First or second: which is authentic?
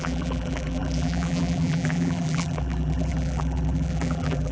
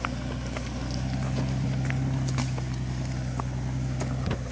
second